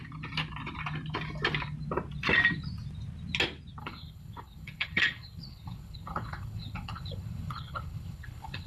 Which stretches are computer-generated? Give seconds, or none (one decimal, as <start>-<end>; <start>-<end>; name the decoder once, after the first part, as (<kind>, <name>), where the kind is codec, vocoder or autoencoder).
3.8-8.7 (codec, HILCodec)